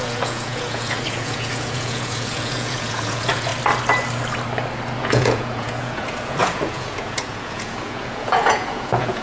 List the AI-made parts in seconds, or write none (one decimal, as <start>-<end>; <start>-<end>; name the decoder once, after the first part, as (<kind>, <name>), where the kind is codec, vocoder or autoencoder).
0.0-3.5 (vocoder, Vocos); 5.0-9.2